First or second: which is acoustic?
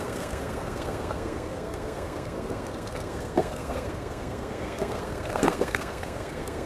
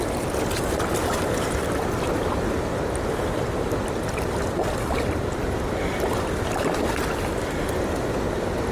second